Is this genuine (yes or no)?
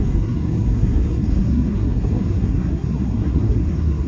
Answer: no